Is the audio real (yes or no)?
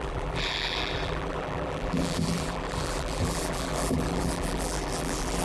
no